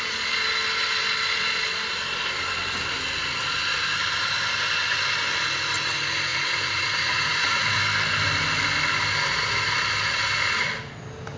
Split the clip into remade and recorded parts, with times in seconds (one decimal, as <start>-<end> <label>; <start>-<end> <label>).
0.0-6.3 recorded; 6.3-7.8 remade; 7.8-11.4 recorded